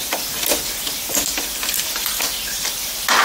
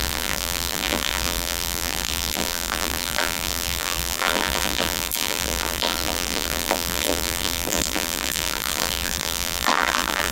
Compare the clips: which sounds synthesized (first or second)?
second